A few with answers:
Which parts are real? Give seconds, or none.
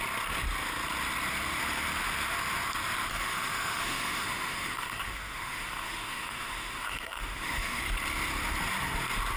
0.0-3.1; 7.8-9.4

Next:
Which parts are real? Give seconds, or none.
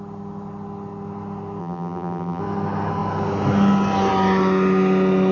0.0-1.6; 2.4-5.3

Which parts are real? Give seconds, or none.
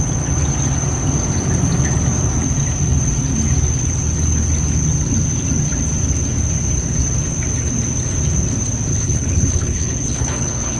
0.0-8.9